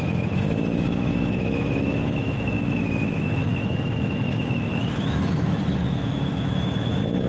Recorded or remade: remade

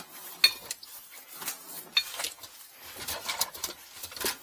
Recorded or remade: recorded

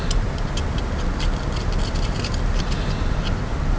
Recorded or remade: recorded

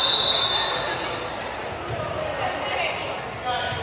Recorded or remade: recorded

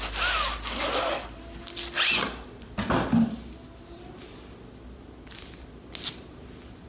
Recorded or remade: recorded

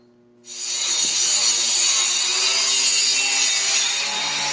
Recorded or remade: recorded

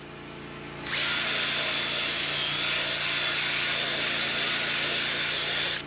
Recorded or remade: recorded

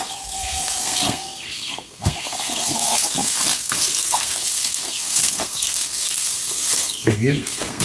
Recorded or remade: remade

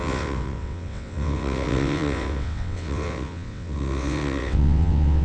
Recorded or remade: remade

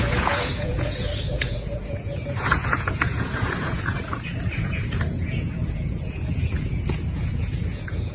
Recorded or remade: remade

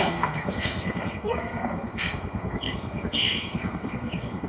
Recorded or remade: remade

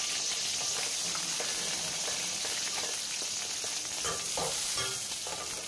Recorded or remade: recorded